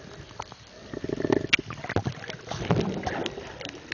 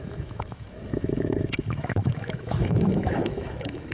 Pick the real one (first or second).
first